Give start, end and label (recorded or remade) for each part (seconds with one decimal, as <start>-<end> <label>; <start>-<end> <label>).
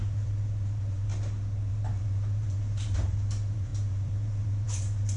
0.0-1.1 remade; 1.1-1.7 recorded; 1.7-5.2 remade